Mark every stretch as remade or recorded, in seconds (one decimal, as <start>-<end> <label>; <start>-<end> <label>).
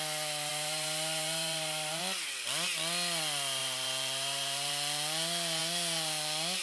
0.0-0.5 recorded; 0.5-2.0 remade; 2.0-3.6 recorded; 3.6-4.7 remade; 4.7-6.6 recorded